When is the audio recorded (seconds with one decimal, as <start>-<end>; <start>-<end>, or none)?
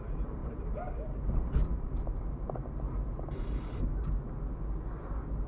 0.0-0.4; 3.7-5.5